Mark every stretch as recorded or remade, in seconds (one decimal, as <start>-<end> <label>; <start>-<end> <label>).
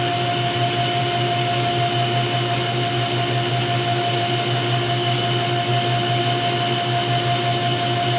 0.0-8.2 recorded